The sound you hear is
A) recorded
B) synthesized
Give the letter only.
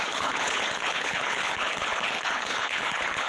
B